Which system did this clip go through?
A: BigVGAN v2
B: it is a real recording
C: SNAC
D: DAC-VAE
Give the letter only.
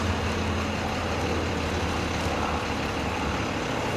B